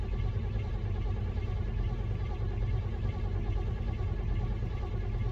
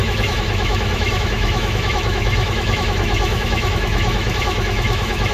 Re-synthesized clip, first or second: second